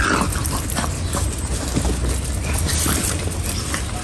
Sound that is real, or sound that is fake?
real